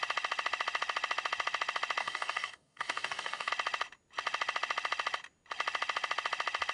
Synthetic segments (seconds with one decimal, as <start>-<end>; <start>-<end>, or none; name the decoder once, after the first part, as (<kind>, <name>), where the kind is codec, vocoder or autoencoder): 2.0-3.5 (codec, DAC)